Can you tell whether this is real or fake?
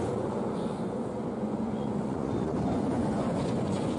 fake